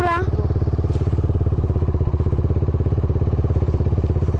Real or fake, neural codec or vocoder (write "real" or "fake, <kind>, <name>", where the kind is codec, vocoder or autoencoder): real